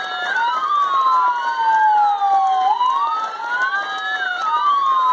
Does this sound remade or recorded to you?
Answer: recorded